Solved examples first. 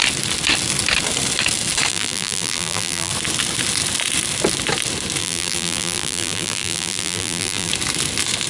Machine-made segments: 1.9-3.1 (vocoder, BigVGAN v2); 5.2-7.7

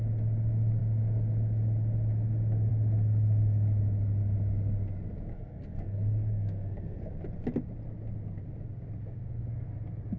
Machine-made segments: 5.3-7.0 (codec, SNAC)

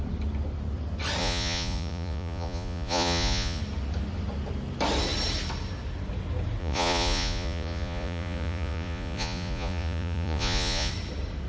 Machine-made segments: 1.2-3.6 (vocoder, Vocos); 6.6-10.9

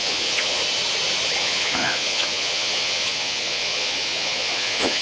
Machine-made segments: 0.0-0.6 (vocoder, Vocos); 1.4-5.0

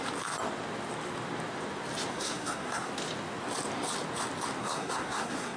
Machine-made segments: 2.1-2.9 (codec, SNAC); 4.6-5.6

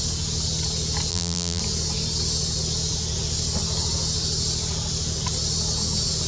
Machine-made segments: 1.1-1.6 (vocoder, BigVGAN v2)

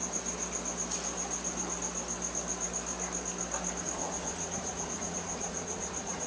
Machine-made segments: 3.8-6.3 (vocoder, Vocos)

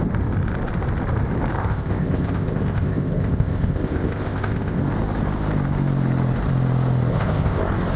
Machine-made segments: 1.6-4.8 (codec, ZipCodec); 7.1-7.6